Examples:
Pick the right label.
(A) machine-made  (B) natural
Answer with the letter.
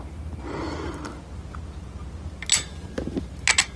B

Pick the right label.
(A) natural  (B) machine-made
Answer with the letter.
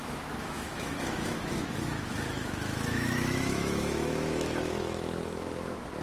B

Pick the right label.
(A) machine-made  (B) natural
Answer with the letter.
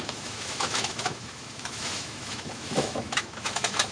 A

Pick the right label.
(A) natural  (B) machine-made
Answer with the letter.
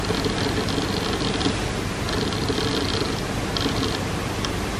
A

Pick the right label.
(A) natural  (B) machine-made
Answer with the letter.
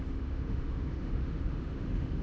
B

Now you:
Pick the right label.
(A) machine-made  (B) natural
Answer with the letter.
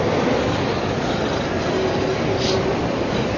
B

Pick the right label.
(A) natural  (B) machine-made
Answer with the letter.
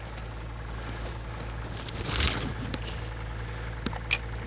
A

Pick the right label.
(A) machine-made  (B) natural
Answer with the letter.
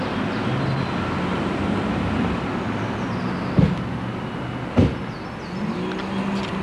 B